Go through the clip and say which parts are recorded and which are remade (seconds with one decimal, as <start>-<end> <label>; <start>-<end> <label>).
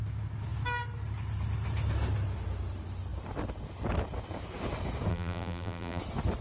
0.0-5.1 recorded; 5.1-6.0 remade; 6.0-6.4 recorded